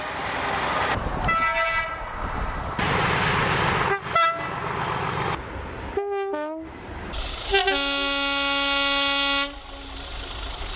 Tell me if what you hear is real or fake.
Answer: real